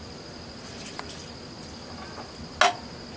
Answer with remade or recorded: recorded